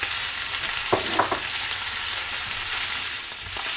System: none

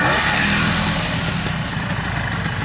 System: none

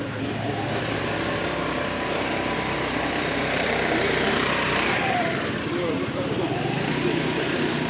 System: vocoder, BigVGAN v2